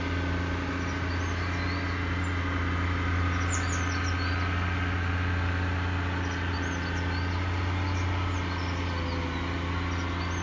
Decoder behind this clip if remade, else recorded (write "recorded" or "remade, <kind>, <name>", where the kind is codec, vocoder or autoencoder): recorded